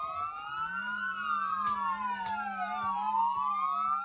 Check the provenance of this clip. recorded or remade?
recorded